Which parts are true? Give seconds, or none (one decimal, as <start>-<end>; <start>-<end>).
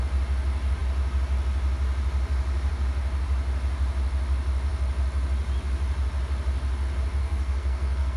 0.0-7.2